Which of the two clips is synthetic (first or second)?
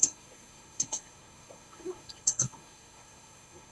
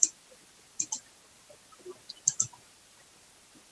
first